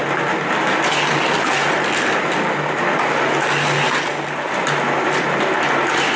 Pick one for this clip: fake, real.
real